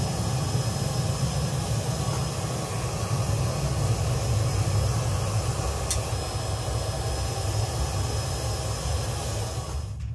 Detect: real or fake real